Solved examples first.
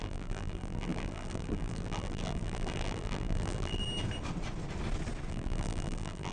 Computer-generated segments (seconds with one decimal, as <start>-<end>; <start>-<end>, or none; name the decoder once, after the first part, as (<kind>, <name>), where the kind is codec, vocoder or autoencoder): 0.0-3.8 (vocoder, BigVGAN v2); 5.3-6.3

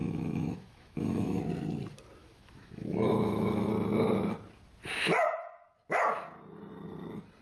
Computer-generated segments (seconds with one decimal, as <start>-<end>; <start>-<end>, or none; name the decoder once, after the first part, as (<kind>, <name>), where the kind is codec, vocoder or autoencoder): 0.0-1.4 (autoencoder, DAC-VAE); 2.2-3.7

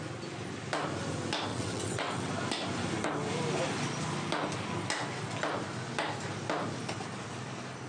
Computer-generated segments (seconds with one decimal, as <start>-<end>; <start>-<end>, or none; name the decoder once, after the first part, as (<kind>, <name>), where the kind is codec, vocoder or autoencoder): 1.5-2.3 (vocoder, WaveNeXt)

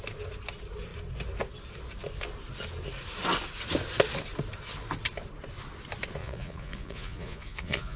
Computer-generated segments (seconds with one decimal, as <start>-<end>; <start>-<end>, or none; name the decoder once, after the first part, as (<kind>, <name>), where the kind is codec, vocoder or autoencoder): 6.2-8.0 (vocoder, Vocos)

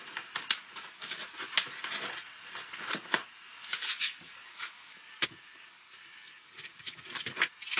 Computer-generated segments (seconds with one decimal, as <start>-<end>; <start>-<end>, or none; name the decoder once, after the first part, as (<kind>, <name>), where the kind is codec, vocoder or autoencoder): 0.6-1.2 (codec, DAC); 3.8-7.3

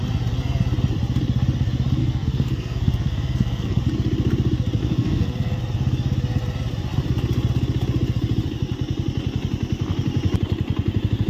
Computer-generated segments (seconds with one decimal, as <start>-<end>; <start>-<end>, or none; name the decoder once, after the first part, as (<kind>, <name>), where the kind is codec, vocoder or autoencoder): 2.0-3.8 (codec, SNAC); 4.8-5.6